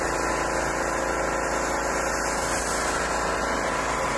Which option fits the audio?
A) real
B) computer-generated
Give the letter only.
A